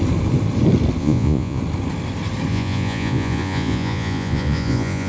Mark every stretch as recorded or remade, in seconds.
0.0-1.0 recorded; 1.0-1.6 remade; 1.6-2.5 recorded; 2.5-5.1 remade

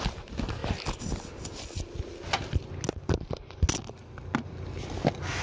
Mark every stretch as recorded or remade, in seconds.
0.0-5.4 recorded

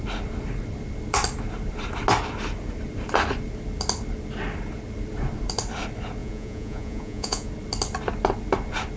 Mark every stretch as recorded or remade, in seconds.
0.0-6.2 recorded; 6.2-7.5 remade; 7.5-9.0 recorded

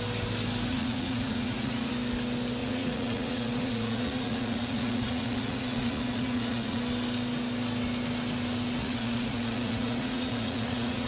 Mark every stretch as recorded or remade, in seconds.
0.0-0.7 recorded; 0.7-1.9 remade; 1.9-2.6 recorded; 2.6-6.8 remade; 6.8-8.8 recorded; 8.8-11.1 remade

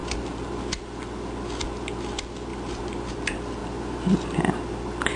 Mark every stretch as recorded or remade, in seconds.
0.0-5.2 recorded

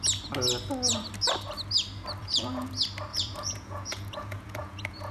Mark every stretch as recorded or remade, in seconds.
0.0-2.2 recorded; 2.2-2.7 remade; 2.7-3.1 recorded; 3.1-5.1 remade

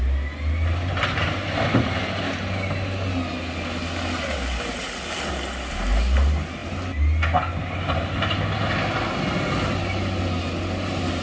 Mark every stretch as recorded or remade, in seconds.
0.0-11.2 recorded